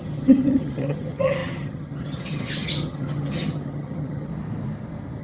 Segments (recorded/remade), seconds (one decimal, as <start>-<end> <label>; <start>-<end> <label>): 0.0-4.3 remade; 4.3-5.2 recorded